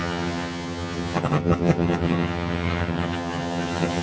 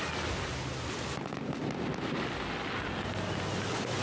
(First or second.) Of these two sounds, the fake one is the first